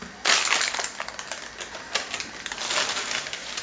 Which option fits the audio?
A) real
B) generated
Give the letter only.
A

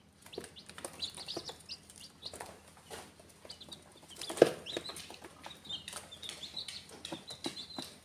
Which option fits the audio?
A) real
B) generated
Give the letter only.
A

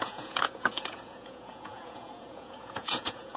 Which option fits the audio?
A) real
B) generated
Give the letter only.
B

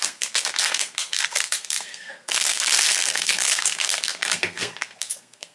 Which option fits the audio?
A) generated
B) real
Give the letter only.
A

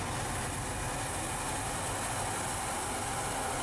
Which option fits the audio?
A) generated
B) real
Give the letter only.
B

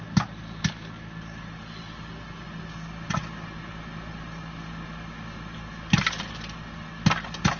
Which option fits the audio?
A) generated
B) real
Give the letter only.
B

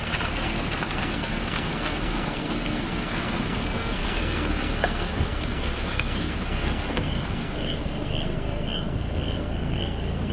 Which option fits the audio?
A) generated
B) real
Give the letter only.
A